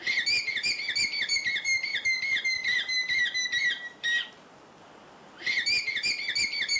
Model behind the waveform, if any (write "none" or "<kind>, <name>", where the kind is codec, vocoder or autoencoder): none